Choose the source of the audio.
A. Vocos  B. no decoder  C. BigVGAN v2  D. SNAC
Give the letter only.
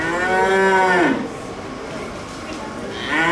B